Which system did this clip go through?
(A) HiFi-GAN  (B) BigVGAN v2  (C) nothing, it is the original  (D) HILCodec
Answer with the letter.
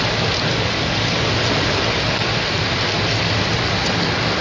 C